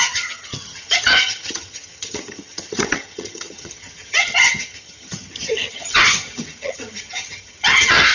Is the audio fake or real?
fake